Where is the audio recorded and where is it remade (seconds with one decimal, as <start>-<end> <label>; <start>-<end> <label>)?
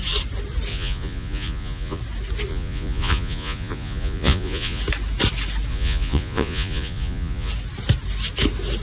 0.0-0.7 recorded; 0.7-2.0 remade; 2.0-2.5 recorded; 2.5-4.8 remade; 4.8-5.7 recorded; 5.7-7.5 remade; 7.5-8.8 recorded